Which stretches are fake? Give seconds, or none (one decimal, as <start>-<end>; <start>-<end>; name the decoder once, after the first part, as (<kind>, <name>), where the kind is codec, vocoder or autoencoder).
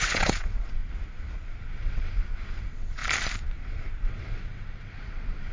0.0-0.8 (vocoder, WaveNeXt); 1.6-3.0; 4.0-5.5